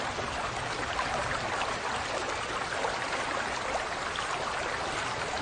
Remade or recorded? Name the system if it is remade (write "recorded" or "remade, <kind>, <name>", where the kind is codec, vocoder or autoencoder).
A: recorded